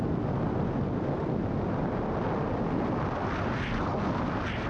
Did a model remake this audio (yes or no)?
no